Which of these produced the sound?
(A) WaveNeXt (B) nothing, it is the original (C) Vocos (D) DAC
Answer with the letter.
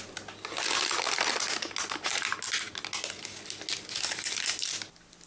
B